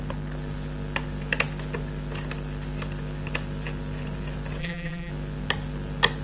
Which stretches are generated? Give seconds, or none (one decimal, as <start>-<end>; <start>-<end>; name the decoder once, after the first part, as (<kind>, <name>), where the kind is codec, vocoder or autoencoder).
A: 4.6-5.1 (vocoder, BigVGAN v2)